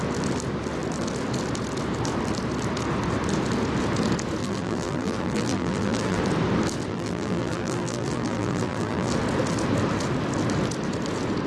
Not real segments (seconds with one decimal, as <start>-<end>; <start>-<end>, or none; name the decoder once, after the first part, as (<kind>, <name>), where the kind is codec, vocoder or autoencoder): 4.4-6.2 (vocoder, BigVGAN v2); 6.9-9.1